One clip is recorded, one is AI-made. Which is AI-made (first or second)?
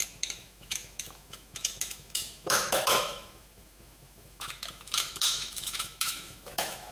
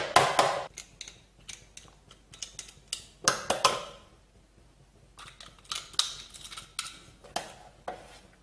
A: first